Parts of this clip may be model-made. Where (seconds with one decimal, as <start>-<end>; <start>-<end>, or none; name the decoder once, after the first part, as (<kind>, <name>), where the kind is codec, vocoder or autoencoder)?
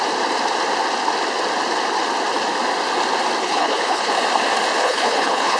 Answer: 3.4-4.1 (codec, HILCodec); 4.8-5.6